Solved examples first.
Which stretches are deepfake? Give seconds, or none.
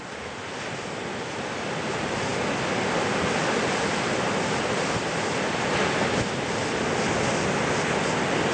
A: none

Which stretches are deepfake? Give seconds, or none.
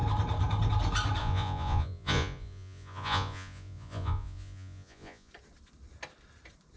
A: 1.2-5.3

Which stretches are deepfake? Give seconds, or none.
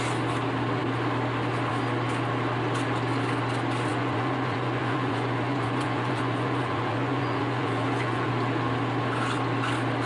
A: 3.9-8.3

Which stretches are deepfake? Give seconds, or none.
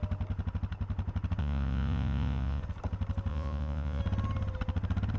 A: 1.4-2.6; 3.3-4.0